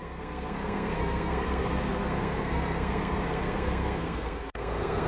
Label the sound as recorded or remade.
remade